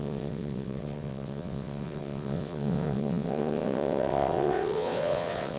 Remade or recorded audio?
remade